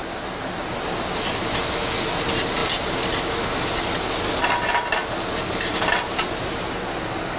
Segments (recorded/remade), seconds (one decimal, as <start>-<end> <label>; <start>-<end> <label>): 0.0-7.4 recorded